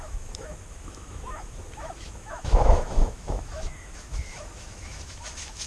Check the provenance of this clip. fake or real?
fake